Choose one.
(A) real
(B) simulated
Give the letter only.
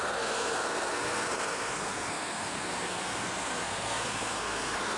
B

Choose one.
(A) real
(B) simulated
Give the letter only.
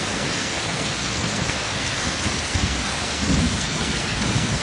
B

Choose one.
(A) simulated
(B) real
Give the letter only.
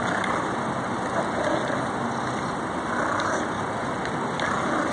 B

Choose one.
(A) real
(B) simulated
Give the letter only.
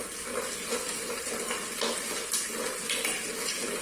A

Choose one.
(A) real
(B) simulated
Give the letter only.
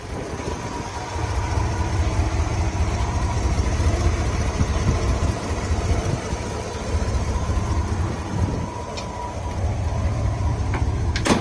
A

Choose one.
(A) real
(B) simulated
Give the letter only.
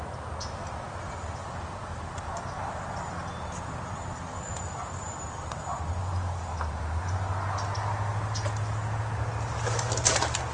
A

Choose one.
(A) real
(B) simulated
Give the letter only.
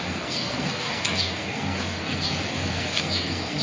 B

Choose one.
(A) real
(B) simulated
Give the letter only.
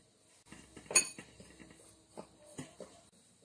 A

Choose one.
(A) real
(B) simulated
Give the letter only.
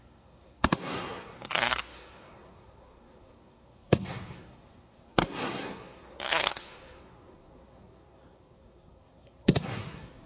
B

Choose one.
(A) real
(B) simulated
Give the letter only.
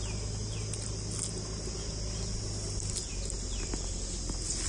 A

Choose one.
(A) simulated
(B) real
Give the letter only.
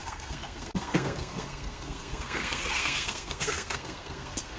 A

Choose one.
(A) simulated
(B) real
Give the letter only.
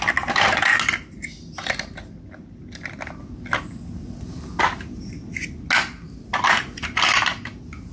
B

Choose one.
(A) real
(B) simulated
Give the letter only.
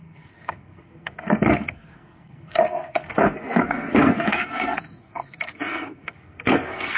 B